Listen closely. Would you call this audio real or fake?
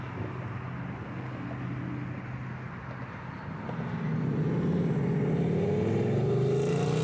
real